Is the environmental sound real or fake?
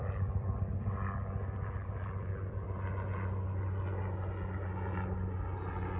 real